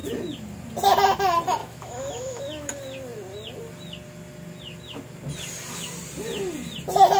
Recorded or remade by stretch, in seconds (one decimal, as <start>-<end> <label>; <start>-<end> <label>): 0.0-1.6 recorded; 1.6-2.7 remade; 2.7-7.2 recorded